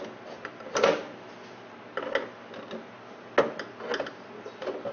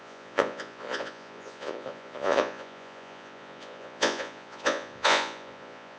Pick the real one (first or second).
first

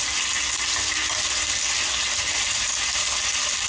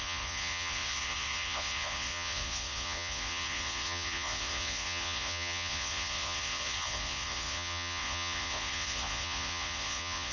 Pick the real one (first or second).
first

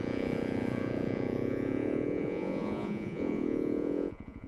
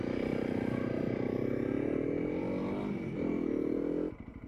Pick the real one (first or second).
second